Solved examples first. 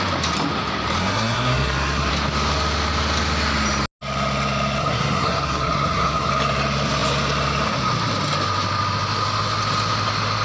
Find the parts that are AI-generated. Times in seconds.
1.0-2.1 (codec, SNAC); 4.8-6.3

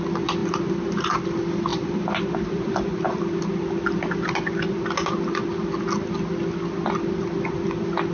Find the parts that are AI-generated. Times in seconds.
1.7-3.2 (vocoder, BigVGAN v2)

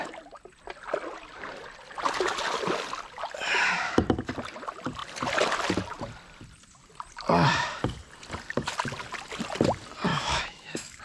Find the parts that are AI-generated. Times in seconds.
10.1-11.0 (autoencoder, DAC-VAE)

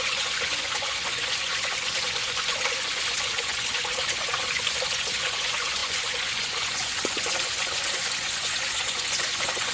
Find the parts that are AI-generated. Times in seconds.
0.0-9.7 (vocoder, Vocos)

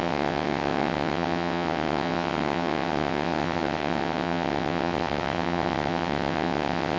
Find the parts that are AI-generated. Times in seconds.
0.0-7.0 (vocoder, WaveNeXt)

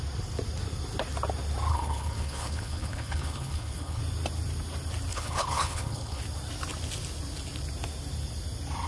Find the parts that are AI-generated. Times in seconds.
1.7-4.0 (codec, HILCodec); 5.1-6.2

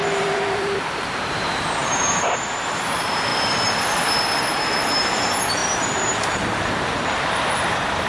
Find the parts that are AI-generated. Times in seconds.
0.0-3.3 (vocoder, BigVGAN v2); 4.9-8.1